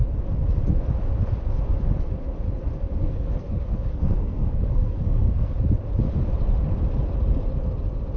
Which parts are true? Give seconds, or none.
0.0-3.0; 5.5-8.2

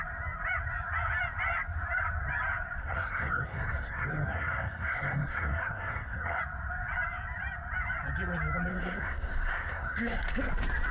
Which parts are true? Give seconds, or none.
0.0-2.8; 6.4-8.7; 10.5-10.9

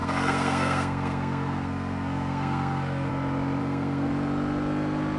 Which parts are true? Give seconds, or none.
3.1-3.6; 4.1-5.2

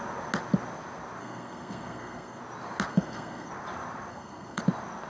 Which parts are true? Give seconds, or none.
0.0-1.2; 2.4-2.9; 3.5-4.1; 4.6-5.1

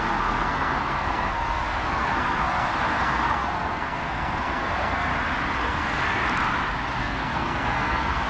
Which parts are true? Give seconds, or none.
5.1-5.6; 6.2-7.0

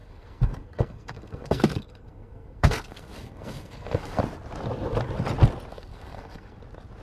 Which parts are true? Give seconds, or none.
4.2-5.7; 6.6-7.0

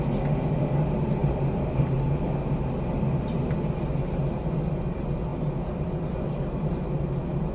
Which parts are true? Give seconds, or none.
0.0-7.5